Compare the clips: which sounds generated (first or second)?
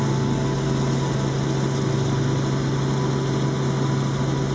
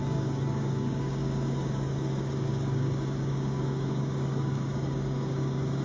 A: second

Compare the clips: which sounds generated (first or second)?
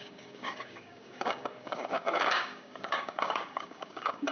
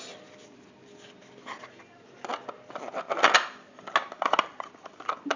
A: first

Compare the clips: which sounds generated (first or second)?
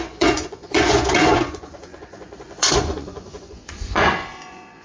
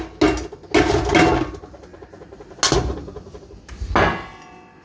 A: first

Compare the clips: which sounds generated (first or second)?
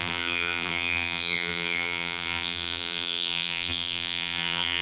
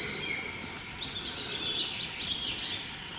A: first